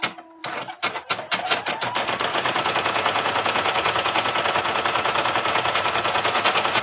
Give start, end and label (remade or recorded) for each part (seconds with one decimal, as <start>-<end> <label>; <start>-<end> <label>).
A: 0.0-2.3 recorded; 2.3-6.8 remade

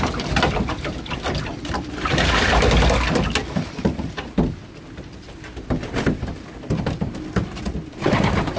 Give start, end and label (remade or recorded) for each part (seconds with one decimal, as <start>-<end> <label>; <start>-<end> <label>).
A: 0.0-8.6 recorded

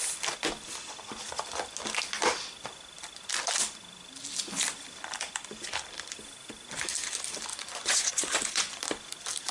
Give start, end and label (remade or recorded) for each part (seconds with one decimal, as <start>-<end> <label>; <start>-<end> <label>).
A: 0.0-7.5 recorded; 7.5-8.8 remade; 8.8-9.5 recorded

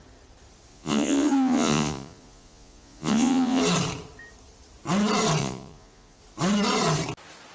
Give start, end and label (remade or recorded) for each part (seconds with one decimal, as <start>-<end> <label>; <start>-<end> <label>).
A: 0.0-0.7 recorded; 0.7-3.6 remade; 3.6-5.4 recorded; 5.4-6.2 remade; 6.2-7.5 recorded

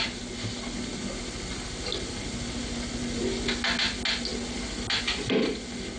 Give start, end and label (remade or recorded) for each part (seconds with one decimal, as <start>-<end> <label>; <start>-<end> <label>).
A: 0.0-6.0 recorded

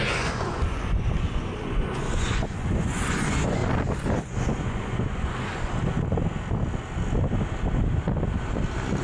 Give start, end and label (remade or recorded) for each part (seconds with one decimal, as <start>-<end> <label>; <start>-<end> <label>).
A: 0.0-3.6 remade; 3.6-4.2 recorded; 4.2-5.7 remade; 5.7-9.0 recorded